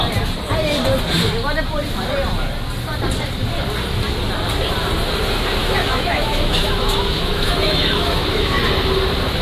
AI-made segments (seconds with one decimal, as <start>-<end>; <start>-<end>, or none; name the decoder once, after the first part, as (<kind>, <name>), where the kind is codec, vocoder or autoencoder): 5.6-8.6 (autoencoder, DAC-VAE)